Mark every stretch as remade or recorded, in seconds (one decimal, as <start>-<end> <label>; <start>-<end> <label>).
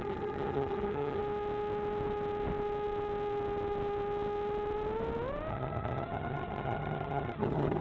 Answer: 0.0-1.2 remade; 1.2-5.5 recorded; 5.5-7.8 remade